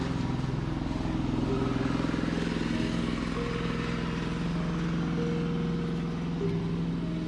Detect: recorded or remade recorded